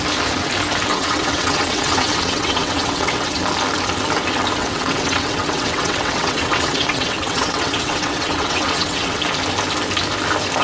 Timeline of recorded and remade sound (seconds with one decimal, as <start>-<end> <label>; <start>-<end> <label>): 0.0-0.9 recorded; 0.9-3.4 remade; 3.4-4.6 recorded; 4.6-9.2 remade; 9.2-10.6 recorded